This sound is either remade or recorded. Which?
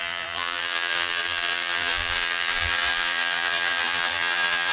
remade